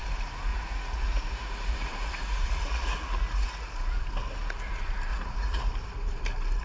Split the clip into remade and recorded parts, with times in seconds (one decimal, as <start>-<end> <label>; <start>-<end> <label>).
0.0-0.5 recorded; 0.5-3.7 remade; 3.7-5.1 recorded; 5.1-5.7 remade; 5.7-6.6 recorded